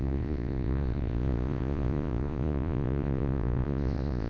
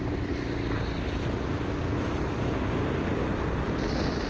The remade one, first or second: first